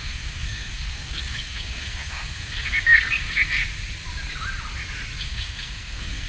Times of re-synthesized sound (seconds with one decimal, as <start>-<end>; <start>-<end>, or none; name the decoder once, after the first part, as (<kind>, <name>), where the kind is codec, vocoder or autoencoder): 0.0-3.6 (codec, SNAC); 5.2-6.3